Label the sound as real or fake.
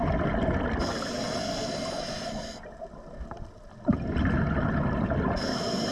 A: real